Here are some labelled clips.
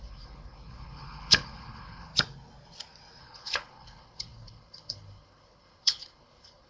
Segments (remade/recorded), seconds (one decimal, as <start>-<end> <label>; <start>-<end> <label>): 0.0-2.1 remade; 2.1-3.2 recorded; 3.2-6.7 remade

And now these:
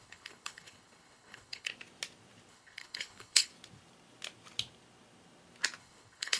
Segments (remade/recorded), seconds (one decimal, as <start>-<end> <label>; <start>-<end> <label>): 0.0-1.7 remade; 1.7-2.5 recorded; 2.5-3.5 remade; 3.5-5.8 recorded; 5.8-6.4 remade

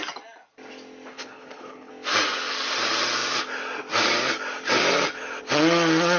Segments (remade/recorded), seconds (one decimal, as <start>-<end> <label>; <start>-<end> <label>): 0.0-1.1 recorded; 1.1-1.9 remade; 1.9-6.2 recorded

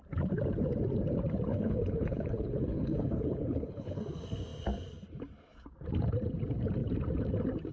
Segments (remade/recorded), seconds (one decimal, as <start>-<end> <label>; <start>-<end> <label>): 0.0-1.5 recorded; 1.5-4.0 remade; 4.0-7.7 recorded

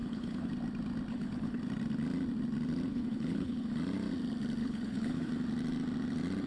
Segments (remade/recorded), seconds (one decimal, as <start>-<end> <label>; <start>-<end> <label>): 0.0-0.5 remade; 0.5-1.1 recorded; 1.1-1.6 remade; 1.6-2.9 recorded; 2.9-3.7 remade; 3.7-4.6 recorded; 4.6-5.3 remade; 5.3-6.5 recorded

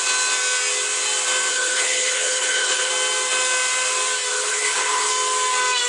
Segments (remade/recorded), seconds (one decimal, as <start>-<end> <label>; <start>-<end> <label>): 0.0-1.5 recorded; 1.5-2.9 remade; 2.9-4.3 recorded; 4.3-5.1 remade; 5.1-5.9 recorded

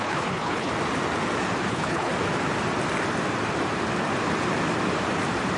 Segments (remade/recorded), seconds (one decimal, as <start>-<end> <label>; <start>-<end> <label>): 0.0-0.7 remade; 0.7-1.7 recorded; 1.7-2.1 remade; 2.1-5.6 recorded

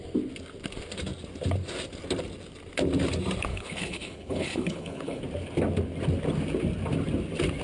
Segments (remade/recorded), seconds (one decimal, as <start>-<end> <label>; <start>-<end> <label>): 0.0-3.5 recorded; 3.5-5.2 remade; 5.2-7.6 recorded